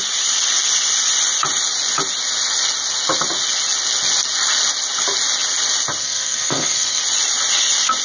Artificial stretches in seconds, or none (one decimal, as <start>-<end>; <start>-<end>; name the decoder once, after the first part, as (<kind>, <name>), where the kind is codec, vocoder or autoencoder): 6.0-7.0 (codec, SNAC)